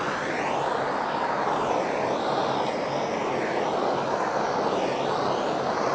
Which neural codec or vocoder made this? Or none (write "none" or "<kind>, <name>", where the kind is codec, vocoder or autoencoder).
none